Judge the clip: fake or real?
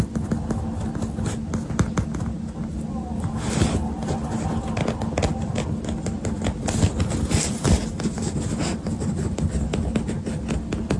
real